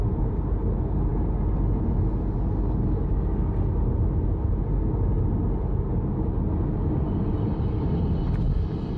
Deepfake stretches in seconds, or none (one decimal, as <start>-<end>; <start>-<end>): none